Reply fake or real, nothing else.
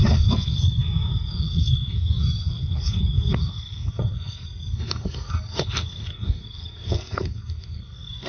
fake